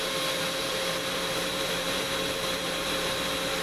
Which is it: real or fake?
fake